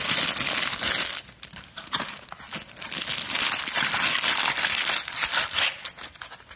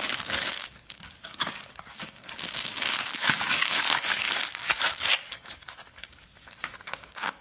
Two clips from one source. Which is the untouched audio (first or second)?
first